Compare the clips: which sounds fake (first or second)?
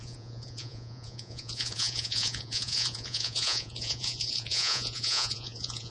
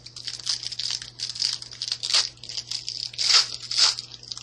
first